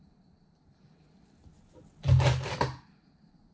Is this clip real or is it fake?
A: real